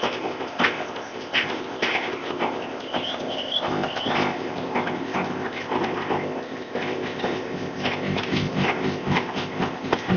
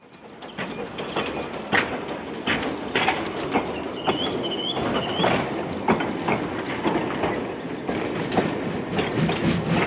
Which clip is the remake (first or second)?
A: first